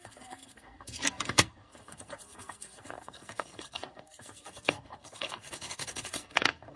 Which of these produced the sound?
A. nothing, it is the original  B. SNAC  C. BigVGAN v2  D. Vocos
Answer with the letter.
B